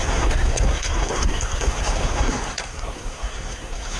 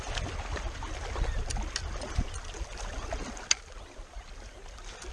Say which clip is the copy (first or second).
first